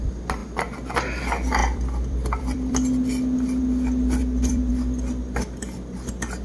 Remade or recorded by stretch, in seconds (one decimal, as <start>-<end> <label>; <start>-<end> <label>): 0.0-1.6 recorded; 1.6-3.6 remade; 3.6-4.2 recorded; 4.2-4.7 remade; 4.7-6.4 recorded